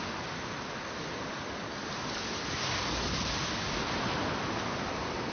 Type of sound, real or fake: real